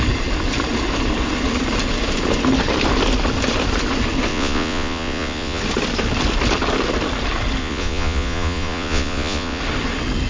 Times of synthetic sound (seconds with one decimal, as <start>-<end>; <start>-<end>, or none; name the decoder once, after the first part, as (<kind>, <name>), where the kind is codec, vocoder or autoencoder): 4.3-5.6 (vocoder, Vocos); 7.6-9.6